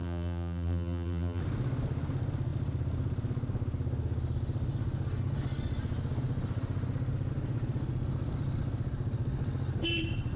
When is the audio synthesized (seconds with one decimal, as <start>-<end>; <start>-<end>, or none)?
0.0-1.4